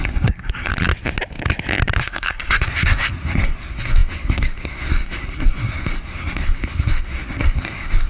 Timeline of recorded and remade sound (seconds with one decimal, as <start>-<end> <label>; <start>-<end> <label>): 0.0-0.7 remade; 0.7-2.0 recorded; 2.0-8.1 remade